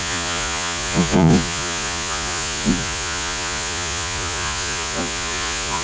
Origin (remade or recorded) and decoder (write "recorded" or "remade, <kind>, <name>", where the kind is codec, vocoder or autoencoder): remade, vocoder, Vocos